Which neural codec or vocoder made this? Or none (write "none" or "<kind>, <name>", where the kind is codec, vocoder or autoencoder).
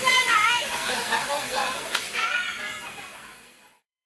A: codec, SNAC